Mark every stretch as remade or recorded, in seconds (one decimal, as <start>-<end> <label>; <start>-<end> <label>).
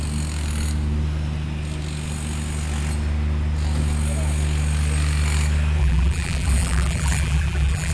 0.0-5.8 recorded; 5.8-7.9 remade